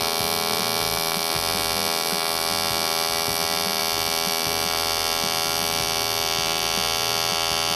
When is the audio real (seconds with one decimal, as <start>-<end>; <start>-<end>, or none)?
0.0-7.8